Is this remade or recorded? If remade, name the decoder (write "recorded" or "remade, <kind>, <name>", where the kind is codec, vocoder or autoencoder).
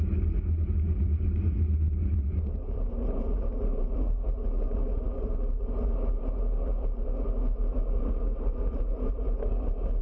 recorded